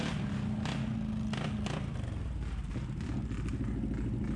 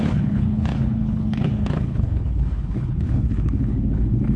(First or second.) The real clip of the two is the first